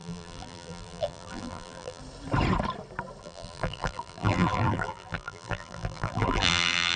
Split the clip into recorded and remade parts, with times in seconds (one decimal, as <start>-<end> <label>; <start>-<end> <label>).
0.0-2.0 remade; 2.0-3.2 recorded; 3.2-7.0 remade